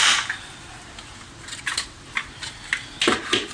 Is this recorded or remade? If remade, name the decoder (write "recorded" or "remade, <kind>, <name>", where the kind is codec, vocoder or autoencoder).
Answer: recorded